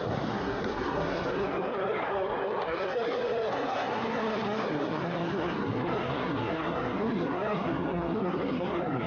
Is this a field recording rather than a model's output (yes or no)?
no